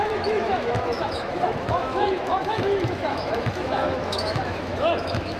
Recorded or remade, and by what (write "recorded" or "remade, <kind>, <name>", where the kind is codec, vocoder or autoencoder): remade, autoencoder, DAC-VAE